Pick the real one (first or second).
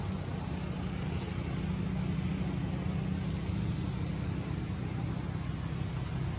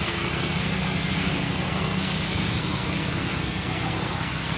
first